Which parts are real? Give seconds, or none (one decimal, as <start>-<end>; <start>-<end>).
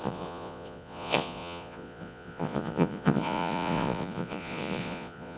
none